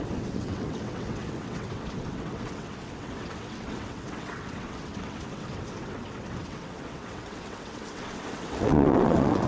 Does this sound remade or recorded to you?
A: remade